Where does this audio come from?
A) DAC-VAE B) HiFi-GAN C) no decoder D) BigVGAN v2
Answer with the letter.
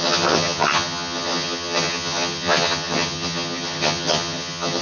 B